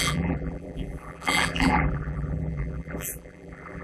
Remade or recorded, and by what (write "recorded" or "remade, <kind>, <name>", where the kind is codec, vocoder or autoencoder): remade, vocoder, BigVGAN v2